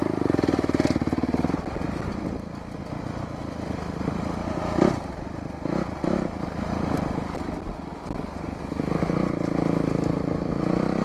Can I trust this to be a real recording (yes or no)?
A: yes